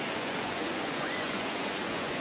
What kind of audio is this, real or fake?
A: fake